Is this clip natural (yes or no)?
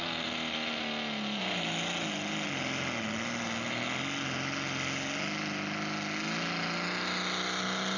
yes